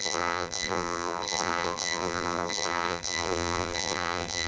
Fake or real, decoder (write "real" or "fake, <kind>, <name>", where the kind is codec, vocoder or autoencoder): fake, vocoder, BigVGAN v2